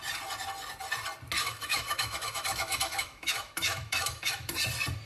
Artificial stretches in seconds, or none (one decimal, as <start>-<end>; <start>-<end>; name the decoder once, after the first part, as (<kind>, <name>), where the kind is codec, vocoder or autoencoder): 1.4-4.5 (autoencoder, DAC-VAE)